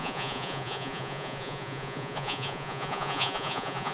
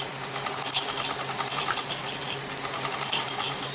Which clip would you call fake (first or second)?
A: first